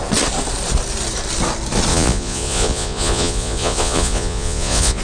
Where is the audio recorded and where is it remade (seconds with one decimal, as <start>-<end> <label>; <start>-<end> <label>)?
0.0-1.9 recorded; 1.9-5.0 remade